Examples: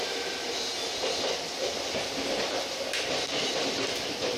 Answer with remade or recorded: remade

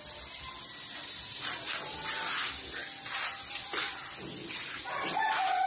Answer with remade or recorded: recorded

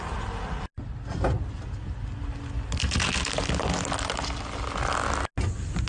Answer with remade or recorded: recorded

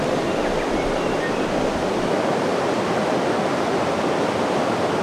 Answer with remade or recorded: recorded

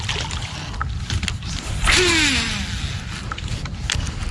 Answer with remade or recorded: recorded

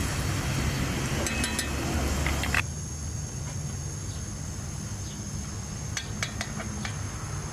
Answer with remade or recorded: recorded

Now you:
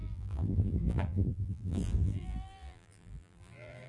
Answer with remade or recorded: remade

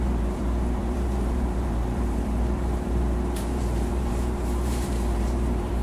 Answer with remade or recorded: remade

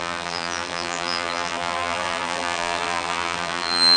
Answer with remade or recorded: remade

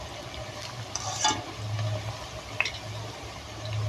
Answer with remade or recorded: remade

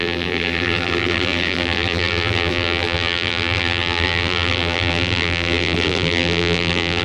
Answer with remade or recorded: remade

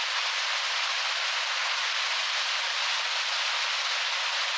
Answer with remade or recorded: recorded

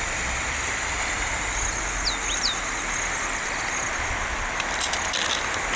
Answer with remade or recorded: recorded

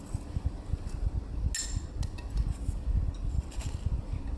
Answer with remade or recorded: recorded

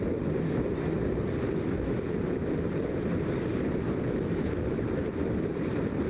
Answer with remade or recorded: remade